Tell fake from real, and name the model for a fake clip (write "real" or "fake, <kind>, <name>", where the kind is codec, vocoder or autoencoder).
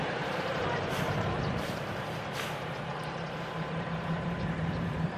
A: fake, vocoder, BigVGAN v2